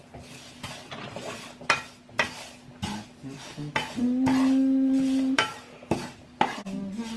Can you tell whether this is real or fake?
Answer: real